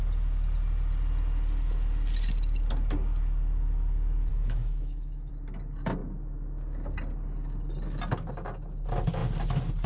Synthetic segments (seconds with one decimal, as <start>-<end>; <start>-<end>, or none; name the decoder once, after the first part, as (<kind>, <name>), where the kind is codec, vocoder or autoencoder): 4.3-5.3 (autoencoder, DAC-VAE)